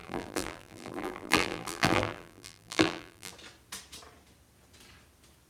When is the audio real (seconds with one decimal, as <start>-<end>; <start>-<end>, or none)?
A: 3.3-5.5